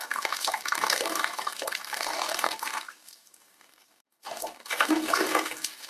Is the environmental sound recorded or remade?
remade